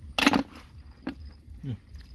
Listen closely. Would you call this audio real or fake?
real